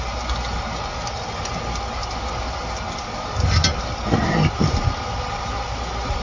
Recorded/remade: recorded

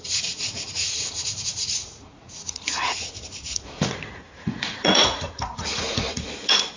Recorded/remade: remade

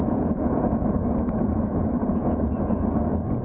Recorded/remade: remade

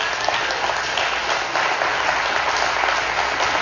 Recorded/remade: recorded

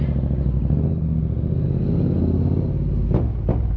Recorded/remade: recorded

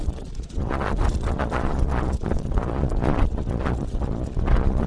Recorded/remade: remade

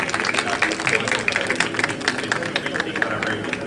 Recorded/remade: recorded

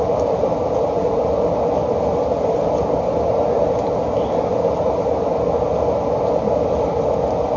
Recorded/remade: recorded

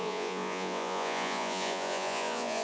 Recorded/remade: remade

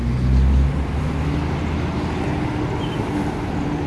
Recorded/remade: recorded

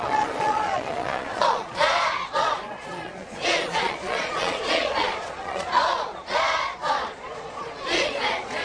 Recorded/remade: remade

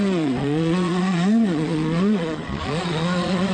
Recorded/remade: remade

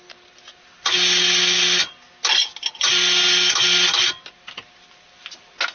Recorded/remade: recorded